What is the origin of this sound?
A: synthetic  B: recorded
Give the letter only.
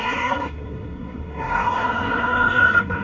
A